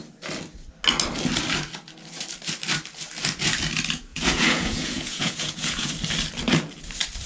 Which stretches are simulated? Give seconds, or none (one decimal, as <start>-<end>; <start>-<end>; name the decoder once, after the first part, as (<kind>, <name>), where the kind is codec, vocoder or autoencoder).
4.1-5.9 (vocoder, Vocos)